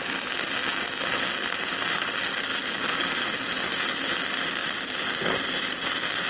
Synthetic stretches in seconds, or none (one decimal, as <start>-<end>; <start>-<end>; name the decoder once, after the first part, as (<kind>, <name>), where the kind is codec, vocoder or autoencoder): 2.5-3.1 (vocoder, BigVGAN v2); 4.6-5.3